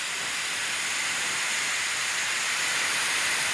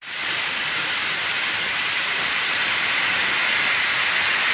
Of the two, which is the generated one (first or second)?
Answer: second